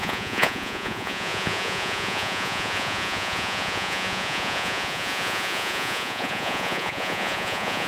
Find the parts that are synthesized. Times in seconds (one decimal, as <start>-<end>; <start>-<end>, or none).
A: 0.0-7.9